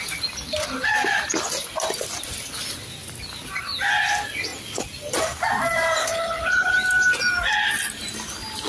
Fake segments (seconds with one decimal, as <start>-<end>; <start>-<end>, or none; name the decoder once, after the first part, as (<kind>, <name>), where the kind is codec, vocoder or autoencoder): 6.0-6.7 (codec, HILCodec)